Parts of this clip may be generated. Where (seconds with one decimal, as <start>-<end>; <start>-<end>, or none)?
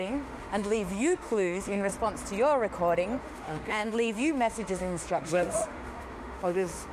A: 0.0-1.9; 3.2-6.9